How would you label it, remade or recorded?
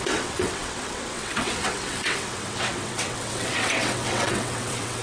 remade